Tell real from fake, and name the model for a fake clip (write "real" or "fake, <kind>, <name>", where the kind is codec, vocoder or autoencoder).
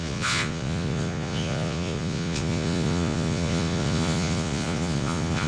fake, vocoder, Vocos